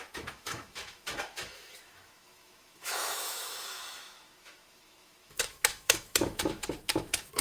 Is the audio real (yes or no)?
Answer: no